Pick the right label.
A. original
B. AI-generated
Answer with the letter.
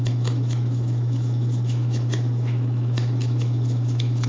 B